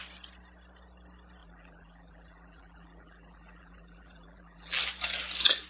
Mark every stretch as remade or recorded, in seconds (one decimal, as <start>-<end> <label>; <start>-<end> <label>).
0.0-1.4 recorded; 1.4-4.8 remade; 4.8-5.7 recorded